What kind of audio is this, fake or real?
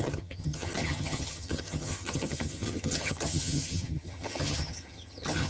fake